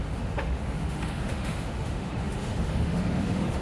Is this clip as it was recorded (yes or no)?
no